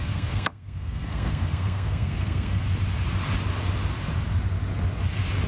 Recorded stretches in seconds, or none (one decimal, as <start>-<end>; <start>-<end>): 2.6-5.5